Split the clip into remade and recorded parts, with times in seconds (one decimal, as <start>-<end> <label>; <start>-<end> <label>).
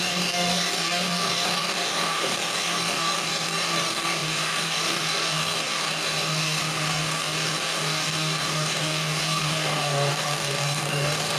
0.0-11.4 remade